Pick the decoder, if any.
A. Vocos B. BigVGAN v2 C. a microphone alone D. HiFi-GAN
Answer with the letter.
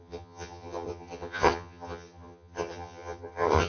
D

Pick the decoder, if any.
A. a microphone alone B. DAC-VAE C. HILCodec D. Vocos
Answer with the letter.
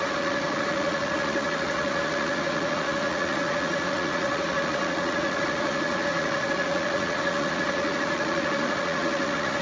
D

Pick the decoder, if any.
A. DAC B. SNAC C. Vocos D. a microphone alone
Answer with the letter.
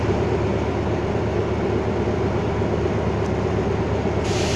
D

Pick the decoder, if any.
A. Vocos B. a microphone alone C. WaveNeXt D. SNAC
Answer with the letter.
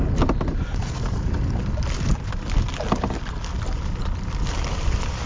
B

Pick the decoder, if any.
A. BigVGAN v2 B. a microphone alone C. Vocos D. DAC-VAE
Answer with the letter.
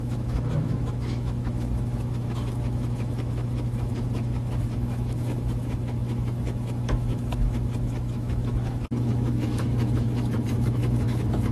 D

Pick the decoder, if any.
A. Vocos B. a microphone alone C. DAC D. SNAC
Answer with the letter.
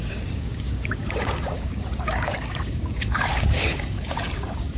C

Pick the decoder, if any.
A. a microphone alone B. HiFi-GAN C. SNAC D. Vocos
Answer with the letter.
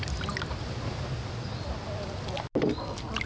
A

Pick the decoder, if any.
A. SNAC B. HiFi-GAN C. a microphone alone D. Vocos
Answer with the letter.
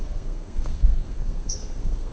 A